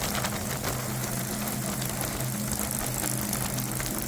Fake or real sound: real